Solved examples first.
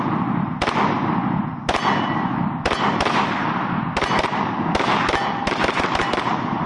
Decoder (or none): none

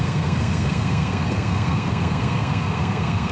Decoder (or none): codec, SNAC